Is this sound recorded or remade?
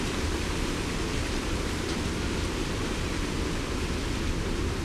recorded